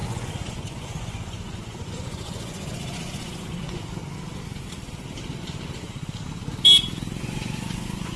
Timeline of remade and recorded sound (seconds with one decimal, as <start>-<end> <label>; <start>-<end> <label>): 0.0-4.0 remade; 4.0-7.2 recorded; 7.2-8.2 remade